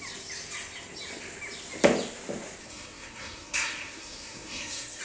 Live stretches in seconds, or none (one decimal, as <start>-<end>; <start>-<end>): 0.0-2.6